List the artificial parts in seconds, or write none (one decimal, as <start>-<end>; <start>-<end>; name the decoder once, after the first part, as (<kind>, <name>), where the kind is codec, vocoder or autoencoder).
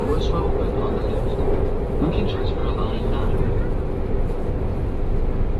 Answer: 2.6-3.3 (vocoder, Vocos)